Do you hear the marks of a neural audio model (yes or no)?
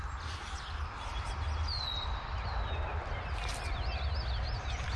no